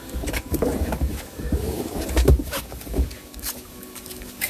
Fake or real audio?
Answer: fake